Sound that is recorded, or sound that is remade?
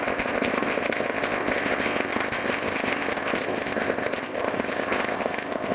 remade